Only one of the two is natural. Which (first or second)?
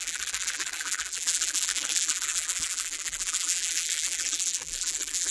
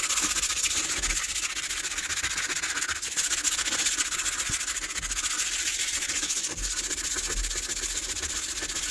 second